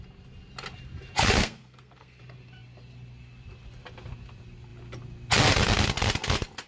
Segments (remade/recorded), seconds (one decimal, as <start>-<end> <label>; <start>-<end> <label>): 0.0-1.4 recorded; 1.4-2.2 remade; 2.2-6.7 recorded